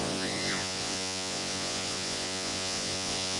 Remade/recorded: remade